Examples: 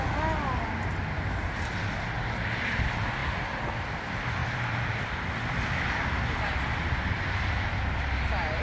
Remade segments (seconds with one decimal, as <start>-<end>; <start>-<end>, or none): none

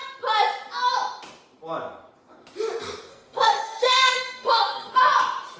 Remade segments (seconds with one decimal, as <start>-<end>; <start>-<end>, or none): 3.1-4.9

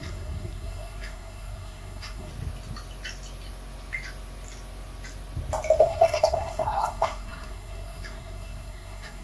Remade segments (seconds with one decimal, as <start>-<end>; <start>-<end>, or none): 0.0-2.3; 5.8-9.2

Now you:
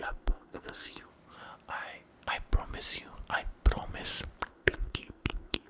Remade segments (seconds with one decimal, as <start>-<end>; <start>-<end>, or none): 0.0-1.1; 4.5-5.7

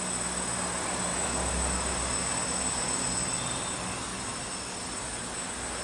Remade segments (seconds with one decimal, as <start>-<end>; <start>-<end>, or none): none

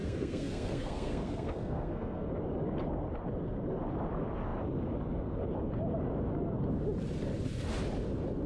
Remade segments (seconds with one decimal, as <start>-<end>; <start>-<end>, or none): 0.0-2.3

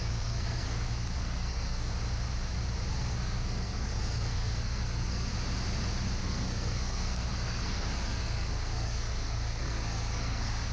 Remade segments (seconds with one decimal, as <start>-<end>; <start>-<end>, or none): 0.0-1.9; 2.9-5.3; 6.2-10.7

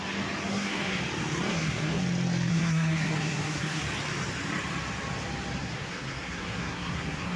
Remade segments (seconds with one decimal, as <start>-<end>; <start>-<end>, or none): 0.5-1.0; 1.5-2.0; 2.5-3.8; 5.6-7.4